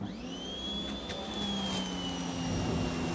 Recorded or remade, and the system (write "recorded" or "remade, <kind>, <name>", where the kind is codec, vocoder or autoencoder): recorded